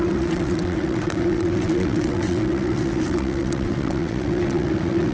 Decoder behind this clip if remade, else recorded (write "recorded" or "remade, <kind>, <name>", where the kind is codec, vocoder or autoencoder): remade, vocoder, WaveNeXt